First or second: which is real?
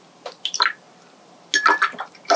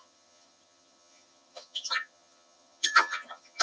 first